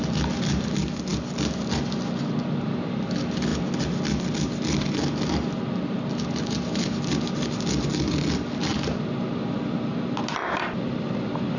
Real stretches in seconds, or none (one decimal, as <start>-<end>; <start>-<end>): 0.0-11.6